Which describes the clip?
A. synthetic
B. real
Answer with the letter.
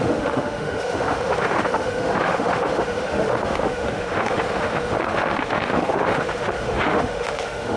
A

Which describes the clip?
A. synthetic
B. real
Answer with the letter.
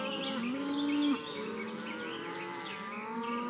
B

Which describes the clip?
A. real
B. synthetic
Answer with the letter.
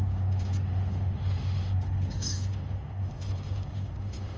B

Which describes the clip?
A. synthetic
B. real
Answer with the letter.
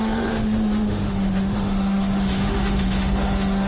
A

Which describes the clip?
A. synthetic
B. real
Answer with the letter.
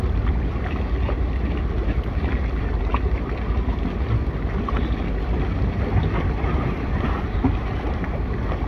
B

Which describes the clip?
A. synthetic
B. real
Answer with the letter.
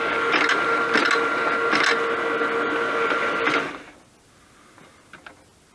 B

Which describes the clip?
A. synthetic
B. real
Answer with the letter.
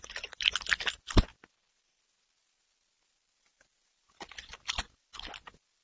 B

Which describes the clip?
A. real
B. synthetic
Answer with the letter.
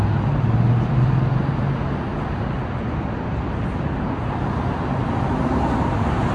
A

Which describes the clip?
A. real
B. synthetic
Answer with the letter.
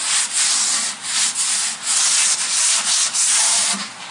A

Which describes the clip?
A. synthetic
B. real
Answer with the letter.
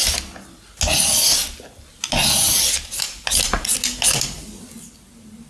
B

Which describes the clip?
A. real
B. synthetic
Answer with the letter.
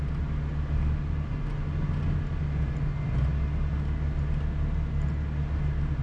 A